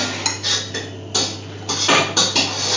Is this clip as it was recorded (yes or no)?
yes